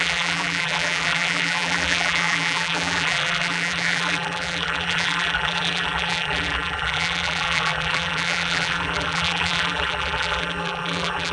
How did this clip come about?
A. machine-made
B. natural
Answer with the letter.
A